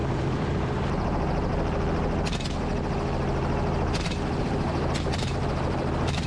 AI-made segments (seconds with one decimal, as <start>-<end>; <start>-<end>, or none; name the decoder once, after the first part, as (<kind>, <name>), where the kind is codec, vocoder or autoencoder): 0.0-1.5 (vocoder, BigVGAN v2); 4.4-6.3